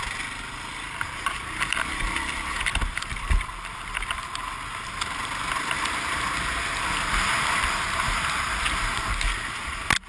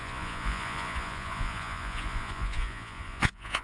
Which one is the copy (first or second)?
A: second